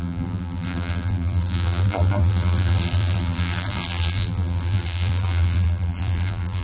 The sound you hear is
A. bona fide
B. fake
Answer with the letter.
B